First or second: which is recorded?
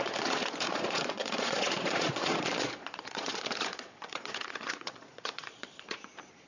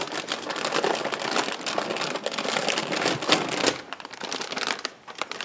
second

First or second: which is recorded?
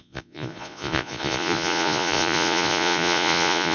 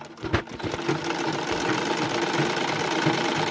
second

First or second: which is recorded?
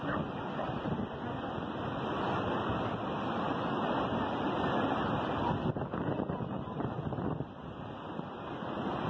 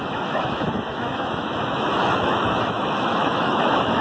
first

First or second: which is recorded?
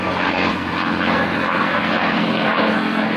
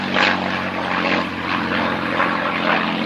second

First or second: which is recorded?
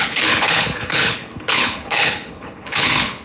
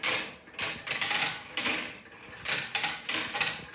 second